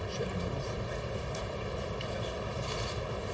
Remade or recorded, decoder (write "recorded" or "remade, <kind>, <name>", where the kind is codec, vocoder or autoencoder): remade, vocoder, BigVGAN v2